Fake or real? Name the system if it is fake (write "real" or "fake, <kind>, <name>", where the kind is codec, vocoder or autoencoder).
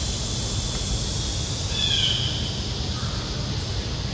real